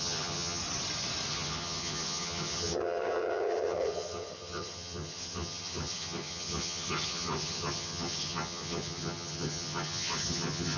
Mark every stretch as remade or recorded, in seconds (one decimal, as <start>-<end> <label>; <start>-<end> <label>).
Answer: 0.0-0.6 remade; 0.6-1.3 recorded; 1.3-10.8 remade